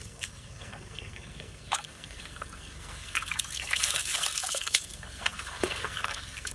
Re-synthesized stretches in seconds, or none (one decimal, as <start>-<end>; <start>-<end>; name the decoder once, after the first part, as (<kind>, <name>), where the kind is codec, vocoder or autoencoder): 0.0-6.5 (codec, SNAC)